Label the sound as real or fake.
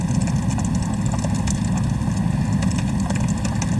real